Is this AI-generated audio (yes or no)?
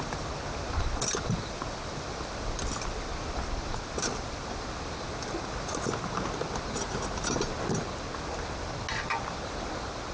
no